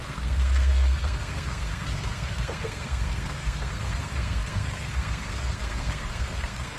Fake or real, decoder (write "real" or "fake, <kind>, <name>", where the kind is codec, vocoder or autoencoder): fake, codec, SNAC